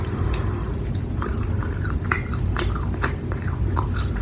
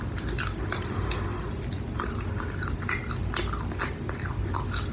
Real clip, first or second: second